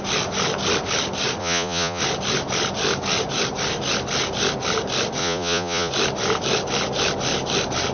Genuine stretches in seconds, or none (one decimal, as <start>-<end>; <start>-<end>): 0.0-1.4; 2.0-5.2; 5.9-7.9